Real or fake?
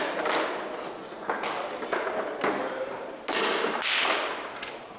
real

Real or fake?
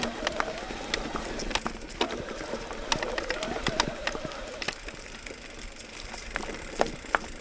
real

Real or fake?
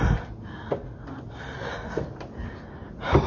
real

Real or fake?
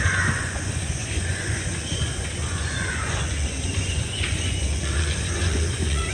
fake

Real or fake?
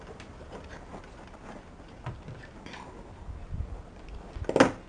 real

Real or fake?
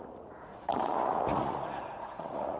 fake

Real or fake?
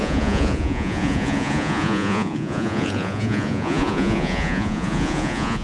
fake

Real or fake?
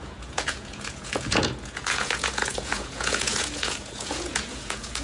fake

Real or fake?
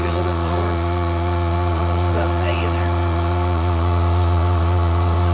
fake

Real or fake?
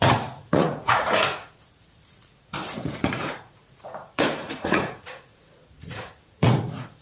fake